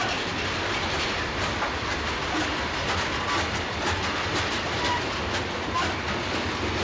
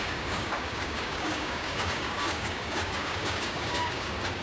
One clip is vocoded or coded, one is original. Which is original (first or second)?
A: first